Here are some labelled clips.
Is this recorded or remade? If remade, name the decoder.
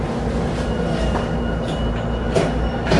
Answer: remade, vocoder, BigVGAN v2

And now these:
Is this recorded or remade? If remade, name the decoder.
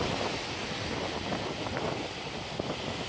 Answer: recorded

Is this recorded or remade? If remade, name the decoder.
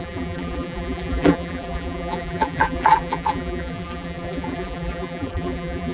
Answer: remade, vocoder, BigVGAN v2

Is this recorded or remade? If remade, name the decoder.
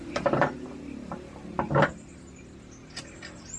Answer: recorded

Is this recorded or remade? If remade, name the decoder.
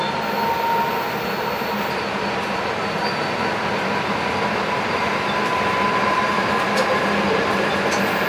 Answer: recorded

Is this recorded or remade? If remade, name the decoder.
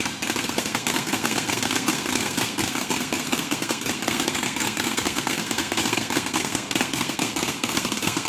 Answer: remade, codec, SNAC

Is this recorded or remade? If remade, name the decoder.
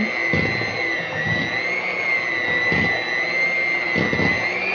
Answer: recorded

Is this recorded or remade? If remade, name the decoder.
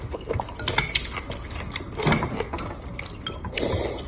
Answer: recorded